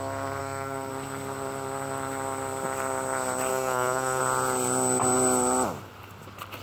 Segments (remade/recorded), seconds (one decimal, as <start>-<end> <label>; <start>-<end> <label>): 0.0-0.4 recorded; 0.4-0.9 remade; 0.9-3.5 recorded; 3.5-4.2 remade; 4.2-6.6 recorded